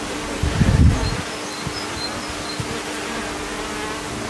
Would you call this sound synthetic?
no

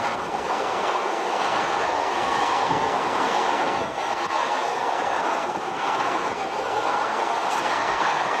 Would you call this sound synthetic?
yes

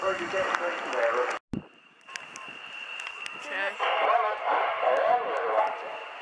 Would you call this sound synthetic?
no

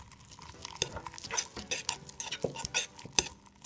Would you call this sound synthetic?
no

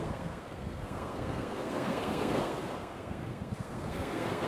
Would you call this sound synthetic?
yes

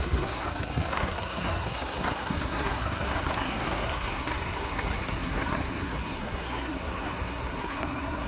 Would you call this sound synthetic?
yes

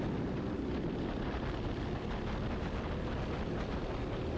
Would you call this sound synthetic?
no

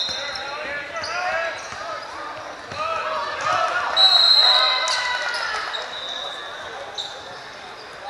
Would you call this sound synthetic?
no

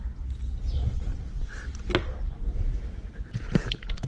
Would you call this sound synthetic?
no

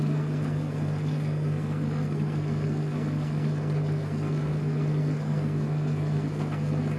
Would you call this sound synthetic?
yes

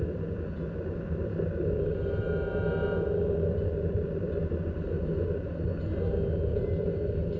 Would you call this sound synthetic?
no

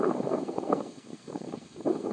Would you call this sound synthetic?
yes